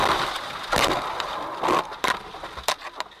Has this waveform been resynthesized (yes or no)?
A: no